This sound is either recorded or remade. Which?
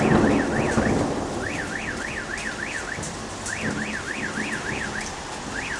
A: recorded